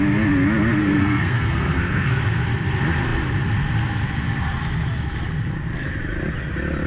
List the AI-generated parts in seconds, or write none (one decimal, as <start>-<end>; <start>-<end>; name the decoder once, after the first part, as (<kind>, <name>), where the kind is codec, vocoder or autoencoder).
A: 0.8-2.1 (codec, SNAC)